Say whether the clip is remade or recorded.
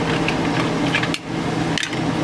recorded